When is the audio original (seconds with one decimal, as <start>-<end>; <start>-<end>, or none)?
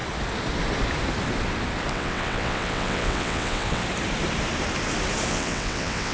0.0-1.9; 3.8-5.3